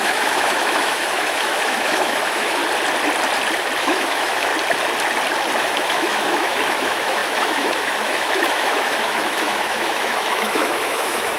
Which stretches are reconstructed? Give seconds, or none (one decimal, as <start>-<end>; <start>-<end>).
0.0-2.6; 3.8-4.5; 5.6-11.4